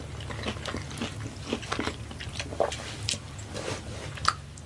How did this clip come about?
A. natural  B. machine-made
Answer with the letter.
A